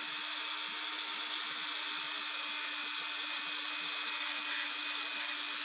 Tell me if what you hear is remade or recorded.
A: recorded